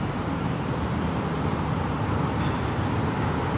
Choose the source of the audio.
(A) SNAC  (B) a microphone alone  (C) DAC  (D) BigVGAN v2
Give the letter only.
D